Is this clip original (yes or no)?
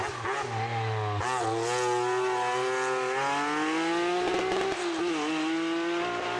yes